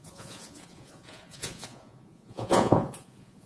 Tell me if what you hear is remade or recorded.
remade